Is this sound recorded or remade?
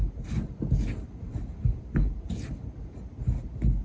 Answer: recorded